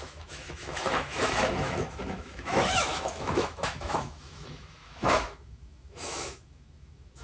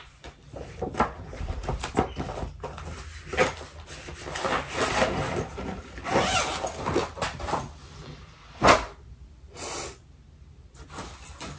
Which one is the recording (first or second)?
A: second